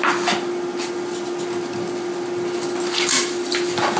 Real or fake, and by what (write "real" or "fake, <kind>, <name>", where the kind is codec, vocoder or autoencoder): real